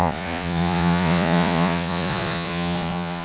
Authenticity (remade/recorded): remade